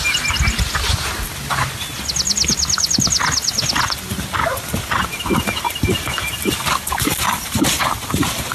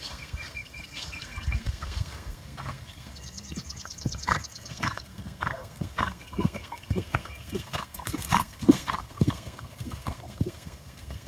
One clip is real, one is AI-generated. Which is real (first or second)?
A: first